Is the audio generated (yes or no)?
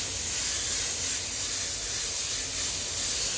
no